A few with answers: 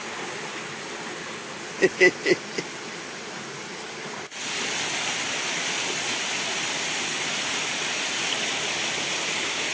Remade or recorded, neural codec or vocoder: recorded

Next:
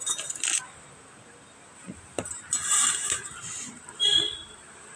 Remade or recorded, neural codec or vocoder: recorded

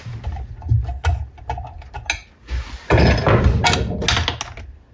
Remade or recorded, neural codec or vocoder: recorded